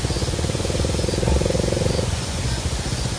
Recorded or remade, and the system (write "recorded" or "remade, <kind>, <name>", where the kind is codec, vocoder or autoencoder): remade, vocoder, Vocos